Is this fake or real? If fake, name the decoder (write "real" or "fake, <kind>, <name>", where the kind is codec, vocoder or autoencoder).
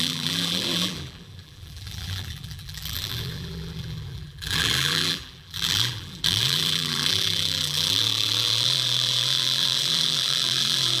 fake, vocoder, BigVGAN v2